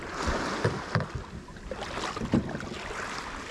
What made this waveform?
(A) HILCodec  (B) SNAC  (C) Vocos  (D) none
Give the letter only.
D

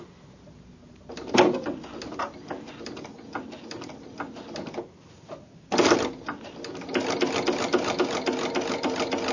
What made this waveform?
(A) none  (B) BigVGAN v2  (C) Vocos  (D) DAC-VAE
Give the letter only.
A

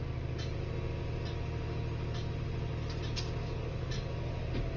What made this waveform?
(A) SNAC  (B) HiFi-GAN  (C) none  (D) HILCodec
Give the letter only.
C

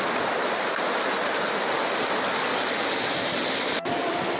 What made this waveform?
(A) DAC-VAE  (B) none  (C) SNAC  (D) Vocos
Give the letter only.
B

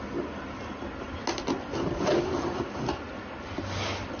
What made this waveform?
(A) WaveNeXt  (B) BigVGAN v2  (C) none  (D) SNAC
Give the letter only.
C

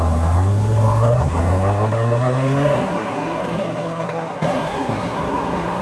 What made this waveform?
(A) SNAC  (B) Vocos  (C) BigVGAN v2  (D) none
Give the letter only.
A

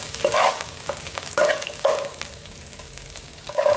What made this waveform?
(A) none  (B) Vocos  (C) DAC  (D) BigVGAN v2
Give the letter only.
C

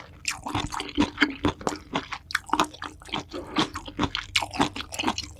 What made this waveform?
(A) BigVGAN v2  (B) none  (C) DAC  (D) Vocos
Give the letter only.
B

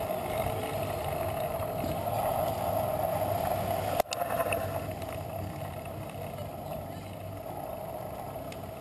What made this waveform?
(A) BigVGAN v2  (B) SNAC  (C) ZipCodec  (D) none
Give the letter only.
D